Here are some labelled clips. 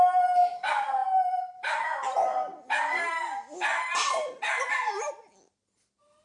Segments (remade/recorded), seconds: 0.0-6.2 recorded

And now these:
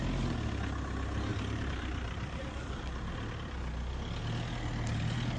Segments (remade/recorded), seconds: 0.0-1.3 recorded; 1.3-3.1 remade; 3.1-5.4 recorded

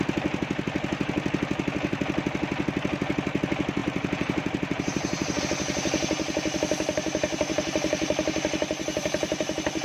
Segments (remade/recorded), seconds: 0.0-3.8 recorded; 3.8-5.4 remade; 5.4-9.8 recorded

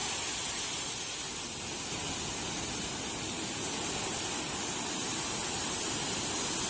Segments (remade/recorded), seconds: 0.0-6.7 recorded